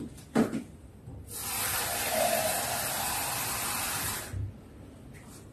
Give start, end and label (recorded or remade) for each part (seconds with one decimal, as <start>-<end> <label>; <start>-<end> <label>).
0.0-1.9 recorded; 1.9-4.7 remade; 4.7-5.5 recorded